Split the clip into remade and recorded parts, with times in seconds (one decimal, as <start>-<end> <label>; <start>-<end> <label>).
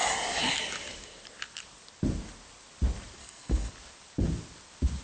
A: 0.0-3.2 recorded; 3.2-3.7 remade; 3.7-5.0 recorded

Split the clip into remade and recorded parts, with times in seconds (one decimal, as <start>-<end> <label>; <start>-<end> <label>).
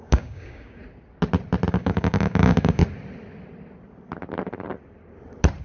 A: 0.0-0.8 remade; 0.8-1.7 recorded; 1.7-2.8 remade; 2.8-5.6 recorded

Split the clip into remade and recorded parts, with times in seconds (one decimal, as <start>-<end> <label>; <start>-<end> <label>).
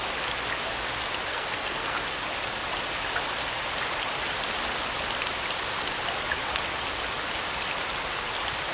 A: 0.0-1.3 recorded; 1.3-2.0 remade; 2.0-8.7 recorded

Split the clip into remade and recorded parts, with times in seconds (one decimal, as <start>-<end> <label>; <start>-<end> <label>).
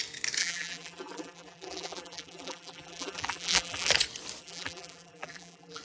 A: 0.0-0.4 recorded; 0.4-3.9 remade; 3.9-4.4 recorded; 4.4-5.8 remade